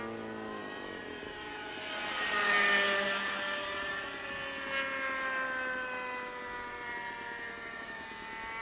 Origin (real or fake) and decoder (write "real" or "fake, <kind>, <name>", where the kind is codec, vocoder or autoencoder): real